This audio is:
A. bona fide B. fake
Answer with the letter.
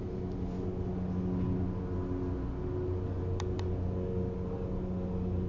A